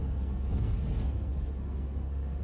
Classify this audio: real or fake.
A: fake